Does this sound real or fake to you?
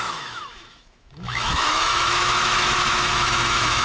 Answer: fake